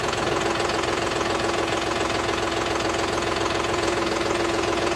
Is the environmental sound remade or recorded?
remade